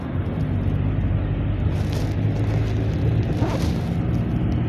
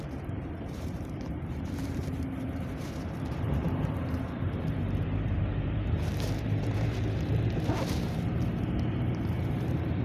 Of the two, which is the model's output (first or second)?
second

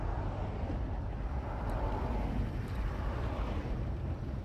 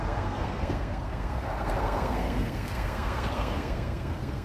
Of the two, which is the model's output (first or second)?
second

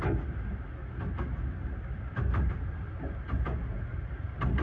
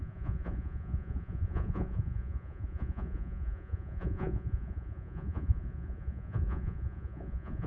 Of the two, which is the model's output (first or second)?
second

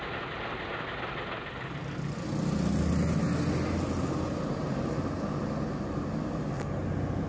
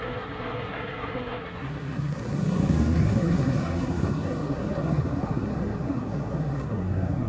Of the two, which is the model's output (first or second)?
second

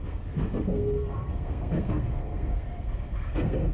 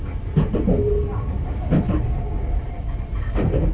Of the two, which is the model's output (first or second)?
first